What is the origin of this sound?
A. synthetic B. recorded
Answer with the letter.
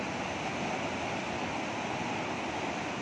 B